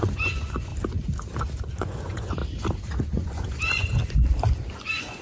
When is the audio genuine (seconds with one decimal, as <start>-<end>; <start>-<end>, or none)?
0.7-1.7; 2.4-3.0; 4.0-4.8